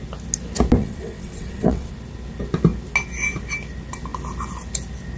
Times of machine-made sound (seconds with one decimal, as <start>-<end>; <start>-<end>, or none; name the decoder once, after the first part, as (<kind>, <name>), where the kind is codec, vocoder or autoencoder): 0.8-1.9 (vocoder, WaveNeXt)